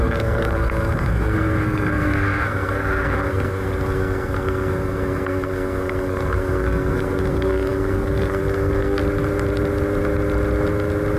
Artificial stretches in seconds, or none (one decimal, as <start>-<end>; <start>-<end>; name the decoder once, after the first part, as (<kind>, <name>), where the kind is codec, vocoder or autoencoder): 0.0-9.0 (codec, SNAC)